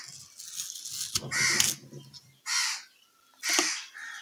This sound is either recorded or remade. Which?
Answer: recorded